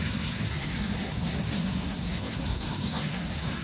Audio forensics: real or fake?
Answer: fake